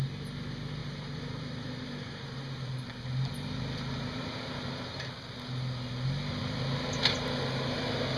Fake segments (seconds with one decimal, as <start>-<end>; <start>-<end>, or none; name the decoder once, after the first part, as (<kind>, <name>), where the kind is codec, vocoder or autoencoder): 0.8-2.9 (vocoder, BigVGAN v2)